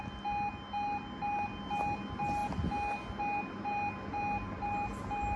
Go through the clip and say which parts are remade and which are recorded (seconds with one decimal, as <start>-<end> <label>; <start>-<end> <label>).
0.0-5.4 recorded